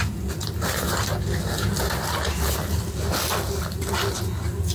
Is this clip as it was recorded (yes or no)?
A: yes